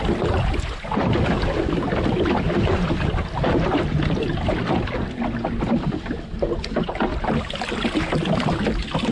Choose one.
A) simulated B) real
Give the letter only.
B